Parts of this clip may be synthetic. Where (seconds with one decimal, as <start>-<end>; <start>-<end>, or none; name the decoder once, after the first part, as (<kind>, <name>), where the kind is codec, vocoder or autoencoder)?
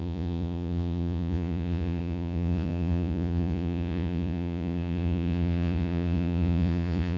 0.0-7.2 (vocoder, Vocos)